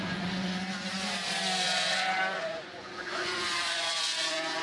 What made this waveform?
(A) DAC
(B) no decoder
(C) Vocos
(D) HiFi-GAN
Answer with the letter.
C